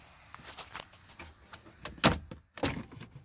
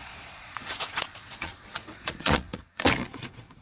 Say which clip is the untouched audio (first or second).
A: first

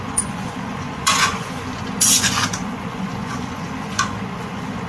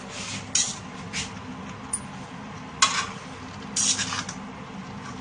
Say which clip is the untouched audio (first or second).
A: second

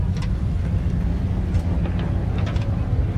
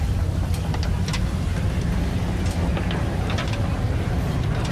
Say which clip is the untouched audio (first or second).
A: first